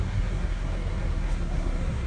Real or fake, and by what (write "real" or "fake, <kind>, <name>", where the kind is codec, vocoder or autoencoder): fake, codec, SNAC